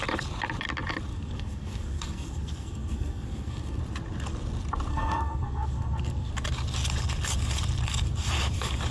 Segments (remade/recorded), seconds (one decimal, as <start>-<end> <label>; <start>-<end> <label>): 0.0-1.1 recorded; 1.1-3.8 remade; 3.8-4.9 recorded; 4.9-6.3 remade; 6.3-8.9 recorded